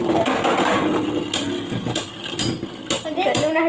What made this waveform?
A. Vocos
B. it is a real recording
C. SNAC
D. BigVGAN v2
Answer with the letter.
B